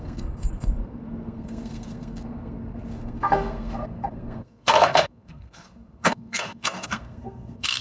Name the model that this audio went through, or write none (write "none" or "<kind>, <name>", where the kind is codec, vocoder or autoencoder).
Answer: codec, SNAC